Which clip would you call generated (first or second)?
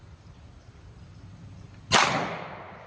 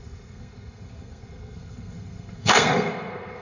second